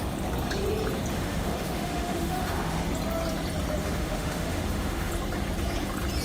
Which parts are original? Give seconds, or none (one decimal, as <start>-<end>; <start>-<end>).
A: 0.0-1.1; 2.8-3.8; 5.1-6.2